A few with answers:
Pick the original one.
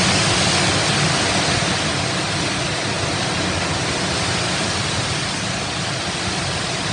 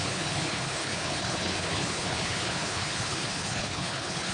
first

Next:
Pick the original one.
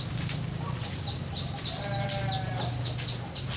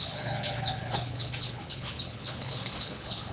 first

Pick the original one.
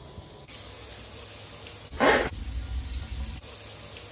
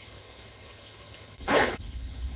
first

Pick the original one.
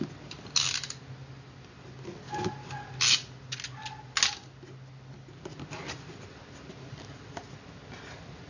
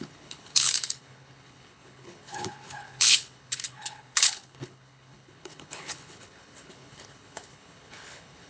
first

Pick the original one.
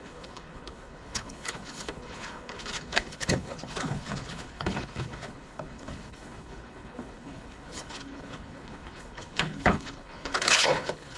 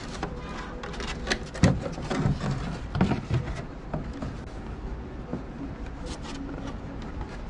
second